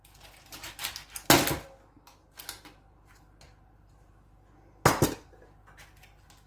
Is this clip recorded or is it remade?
recorded